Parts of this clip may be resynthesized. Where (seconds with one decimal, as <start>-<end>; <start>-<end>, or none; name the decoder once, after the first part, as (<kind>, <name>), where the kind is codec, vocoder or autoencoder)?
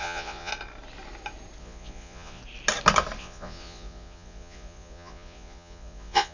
0.0-0.5 (vocoder, Vocos); 1.6-2.4; 3.2-6.3